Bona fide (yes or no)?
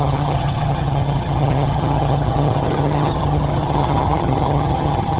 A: no